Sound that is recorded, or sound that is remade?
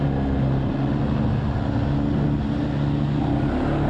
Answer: recorded